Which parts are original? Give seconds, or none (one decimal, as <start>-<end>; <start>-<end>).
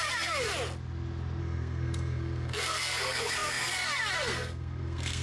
0.5-1.4